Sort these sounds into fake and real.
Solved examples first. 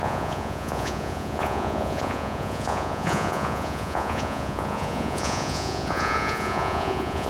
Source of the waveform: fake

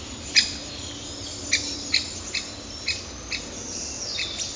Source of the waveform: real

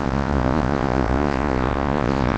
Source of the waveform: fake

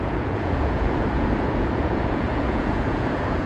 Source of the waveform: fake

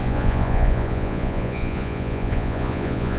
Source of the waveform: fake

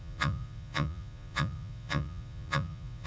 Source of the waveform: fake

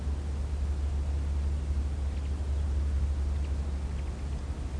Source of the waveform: real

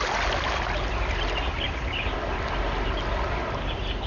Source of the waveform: real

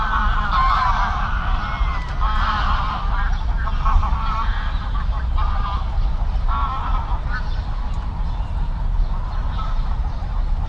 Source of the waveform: real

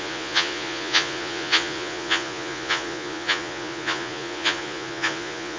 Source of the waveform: fake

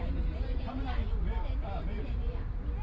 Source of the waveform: real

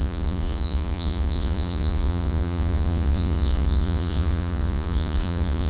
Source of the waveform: fake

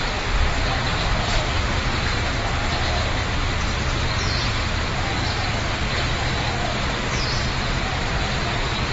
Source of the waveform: real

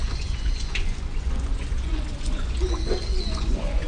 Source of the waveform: fake